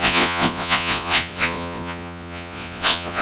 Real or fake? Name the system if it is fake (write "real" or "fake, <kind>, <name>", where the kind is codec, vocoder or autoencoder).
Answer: fake, vocoder, Vocos